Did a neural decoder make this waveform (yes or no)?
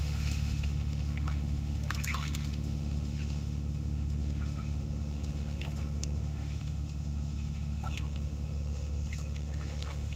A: yes